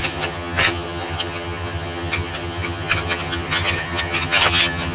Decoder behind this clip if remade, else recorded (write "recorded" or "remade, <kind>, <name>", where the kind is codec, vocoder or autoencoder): remade, vocoder, HiFi-GAN